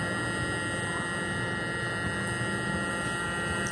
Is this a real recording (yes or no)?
yes